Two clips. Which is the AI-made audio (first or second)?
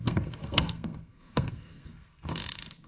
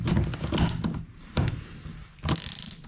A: first